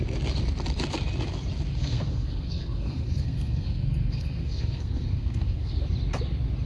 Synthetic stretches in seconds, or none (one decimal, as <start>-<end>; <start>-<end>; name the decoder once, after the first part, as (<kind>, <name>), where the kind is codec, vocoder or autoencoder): 1.8-5.8 (codec, SNAC)